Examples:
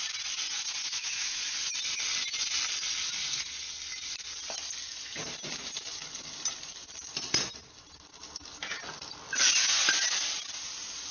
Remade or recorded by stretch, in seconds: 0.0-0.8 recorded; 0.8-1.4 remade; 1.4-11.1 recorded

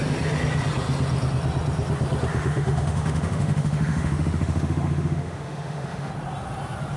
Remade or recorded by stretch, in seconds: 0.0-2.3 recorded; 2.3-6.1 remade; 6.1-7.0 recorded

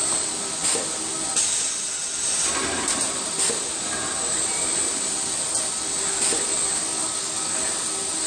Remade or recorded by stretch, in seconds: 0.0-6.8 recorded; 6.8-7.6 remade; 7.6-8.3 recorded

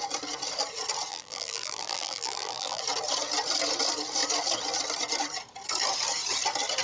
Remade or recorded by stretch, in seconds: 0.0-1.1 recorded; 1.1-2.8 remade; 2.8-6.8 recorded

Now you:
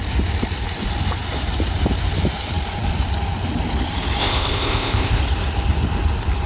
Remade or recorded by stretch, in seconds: 0.0-4.2 recorded; 4.2-5.2 remade; 5.2-6.5 recorded

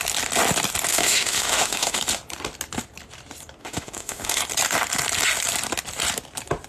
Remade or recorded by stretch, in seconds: 0.0-0.9 recorded; 0.9-2.0 remade; 2.0-3.6 recorded; 3.6-4.4 remade; 4.4-6.7 recorded

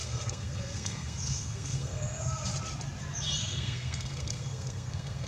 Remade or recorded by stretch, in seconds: 0.0-2.5 remade; 2.5-3.4 recorded; 3.4-5.3 remade